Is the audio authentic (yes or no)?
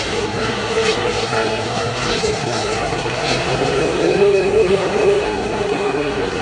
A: no